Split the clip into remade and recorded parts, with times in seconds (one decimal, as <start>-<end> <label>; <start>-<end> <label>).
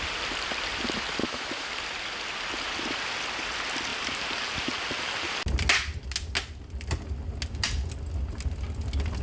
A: 0.0-1.2 recorded; 1.2-1.7 remade; 1.7-9.2 recorded